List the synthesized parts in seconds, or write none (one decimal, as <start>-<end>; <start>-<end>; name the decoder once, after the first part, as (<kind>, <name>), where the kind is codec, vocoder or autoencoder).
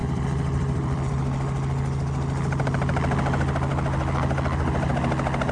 0.0-1.1 (vocoder, BigVGAN v2)